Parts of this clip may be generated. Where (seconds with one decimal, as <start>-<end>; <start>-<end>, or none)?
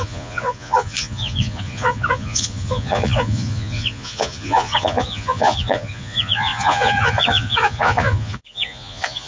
0.0-9.3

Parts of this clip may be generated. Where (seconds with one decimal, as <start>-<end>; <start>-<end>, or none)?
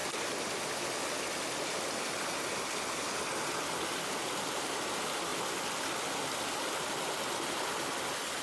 none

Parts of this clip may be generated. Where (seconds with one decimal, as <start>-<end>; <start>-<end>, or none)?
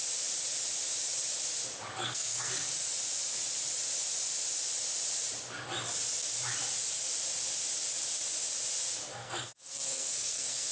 2.0-2.5; 9.1-10.7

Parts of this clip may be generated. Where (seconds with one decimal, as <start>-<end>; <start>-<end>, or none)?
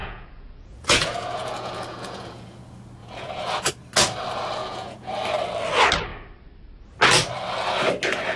0.0-2.6; 3.0-3.7; 4.6-5.1